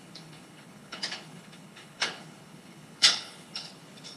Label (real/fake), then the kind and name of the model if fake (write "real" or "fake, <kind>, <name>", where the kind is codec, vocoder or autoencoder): fake, codec, HILCodec